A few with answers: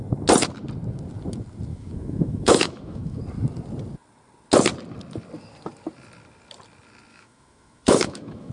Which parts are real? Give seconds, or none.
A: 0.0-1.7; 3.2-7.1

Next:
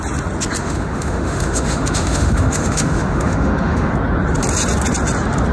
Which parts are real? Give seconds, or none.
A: 0.0-0.6; 3.9-5.5

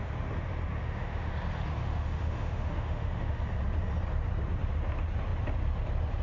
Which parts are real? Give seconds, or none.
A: 0.0-0.8; 1.3-1.8; 3.4-6.2

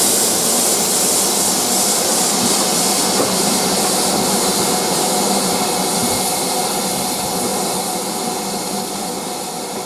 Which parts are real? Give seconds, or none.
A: 0.0-9.9

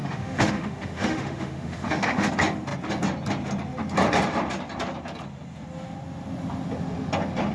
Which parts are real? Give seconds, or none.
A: 2.3-7.5

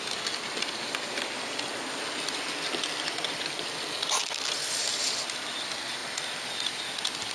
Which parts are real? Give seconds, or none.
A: 0.0-7.3

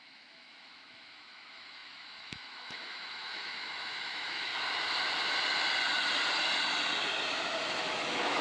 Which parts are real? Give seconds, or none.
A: 4.5-7.8

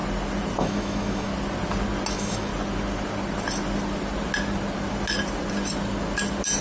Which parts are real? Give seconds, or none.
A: 0.0-0.6; 1.3-2.1; 2.5-6.6